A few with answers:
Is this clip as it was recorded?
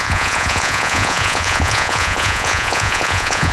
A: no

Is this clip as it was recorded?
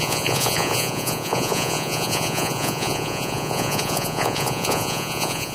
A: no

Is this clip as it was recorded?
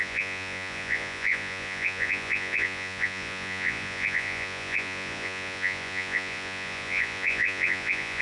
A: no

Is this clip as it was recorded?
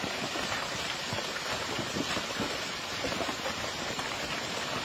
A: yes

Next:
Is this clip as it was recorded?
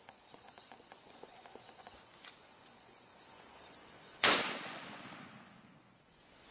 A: no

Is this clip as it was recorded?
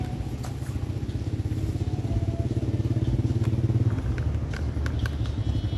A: yes